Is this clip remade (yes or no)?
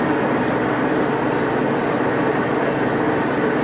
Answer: no